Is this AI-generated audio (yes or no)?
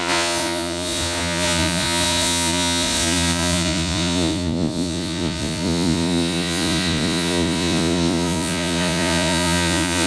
yes